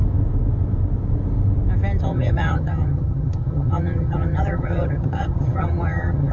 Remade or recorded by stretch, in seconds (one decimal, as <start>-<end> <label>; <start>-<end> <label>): 0.0-2.0 recorded; 2.0-6.3 remade